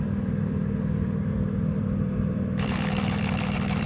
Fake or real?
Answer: fake